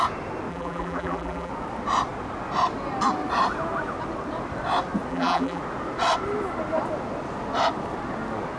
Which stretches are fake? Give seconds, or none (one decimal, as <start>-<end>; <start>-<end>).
0.5-1.5; 5.1-5.6